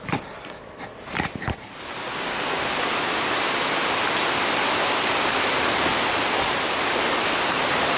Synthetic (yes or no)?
no